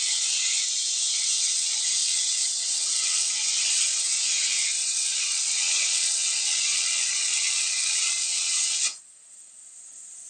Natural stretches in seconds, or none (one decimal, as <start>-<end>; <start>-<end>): none